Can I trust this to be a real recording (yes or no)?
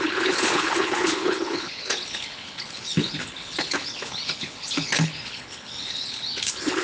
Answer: no